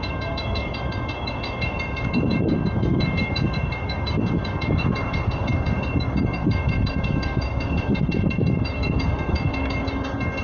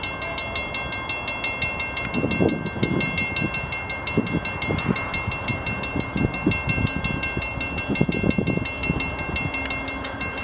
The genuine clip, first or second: second